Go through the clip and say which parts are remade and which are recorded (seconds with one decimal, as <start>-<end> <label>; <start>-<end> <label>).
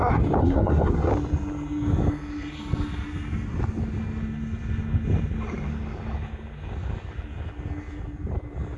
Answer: 0.0-0.4 recorded; 0.4-1.1 remade; 1.1-8.8 recorded